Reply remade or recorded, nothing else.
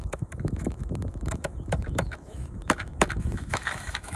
remade